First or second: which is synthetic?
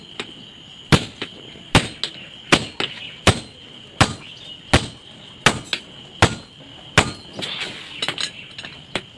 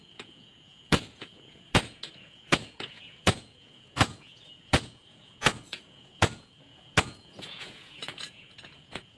second